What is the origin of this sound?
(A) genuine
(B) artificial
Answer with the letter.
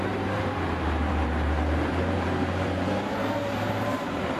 B